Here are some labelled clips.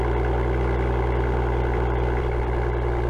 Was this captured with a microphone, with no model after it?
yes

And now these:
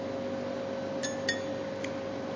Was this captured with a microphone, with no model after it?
yes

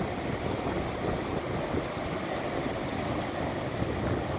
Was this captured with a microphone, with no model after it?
yes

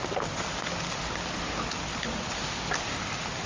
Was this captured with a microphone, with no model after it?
yes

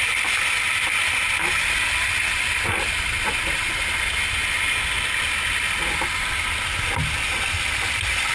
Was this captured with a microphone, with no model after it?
yes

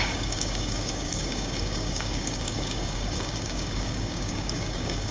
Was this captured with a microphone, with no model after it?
no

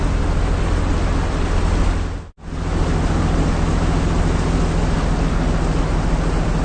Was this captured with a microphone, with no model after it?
yes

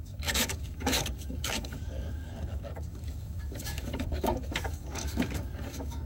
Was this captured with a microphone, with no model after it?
no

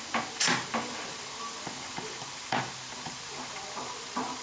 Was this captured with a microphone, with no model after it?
yes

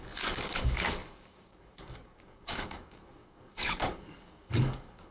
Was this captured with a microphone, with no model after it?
no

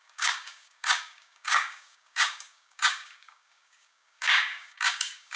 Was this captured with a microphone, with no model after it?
no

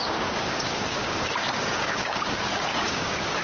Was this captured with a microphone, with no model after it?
no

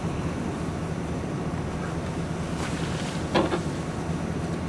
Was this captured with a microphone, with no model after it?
yes